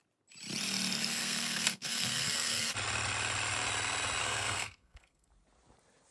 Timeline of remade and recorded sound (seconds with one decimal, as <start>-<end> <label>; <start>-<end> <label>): 0.0-1.2 recorded; 1.2-2.7 remade; 2.7-4.2 recorded; 4.2-5.3 remade; 5.3-6.1 recorded